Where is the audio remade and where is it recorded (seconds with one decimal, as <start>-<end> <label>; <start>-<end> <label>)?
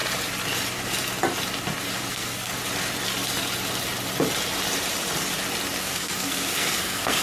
0.0-2.1 recorded; 2.1-2.5 remade; 2.5-5.8 recorded; 5.8-7.2 remade